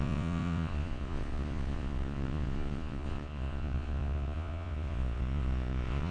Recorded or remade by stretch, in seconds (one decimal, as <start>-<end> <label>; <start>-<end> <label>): 0.0-6.1 remade